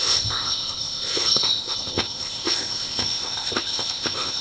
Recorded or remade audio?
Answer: remade